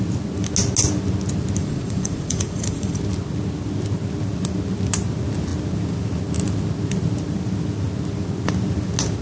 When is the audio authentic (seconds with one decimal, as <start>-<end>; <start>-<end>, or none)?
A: 0.0-1.6; 3.0-9.2